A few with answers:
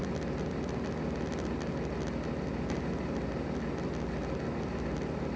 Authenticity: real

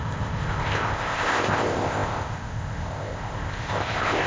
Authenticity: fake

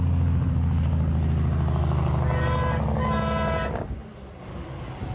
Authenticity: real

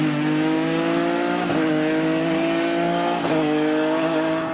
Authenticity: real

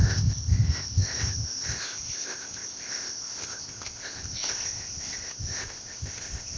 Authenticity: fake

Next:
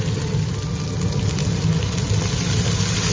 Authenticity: real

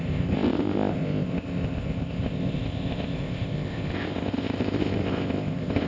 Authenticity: fake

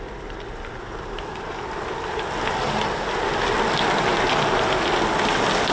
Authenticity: real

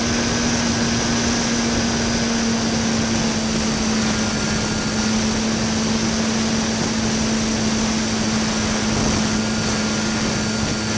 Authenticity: real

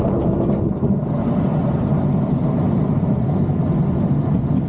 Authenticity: real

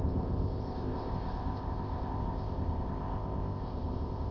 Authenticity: fake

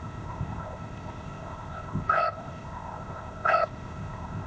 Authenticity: fake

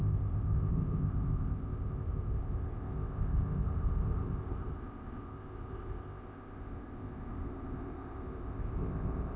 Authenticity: fake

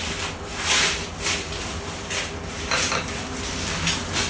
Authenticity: real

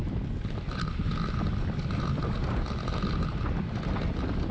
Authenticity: real